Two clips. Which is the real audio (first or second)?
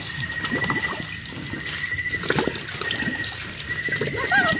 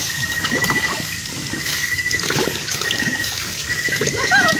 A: first